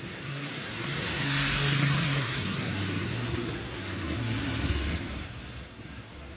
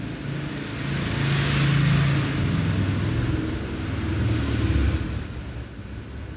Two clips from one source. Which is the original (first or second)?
second